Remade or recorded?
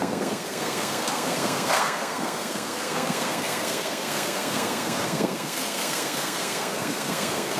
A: remade